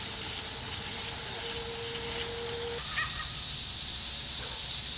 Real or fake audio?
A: real